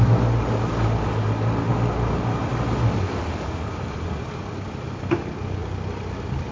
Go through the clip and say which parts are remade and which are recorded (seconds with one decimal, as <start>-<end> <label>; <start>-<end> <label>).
0.0-6.5 recorded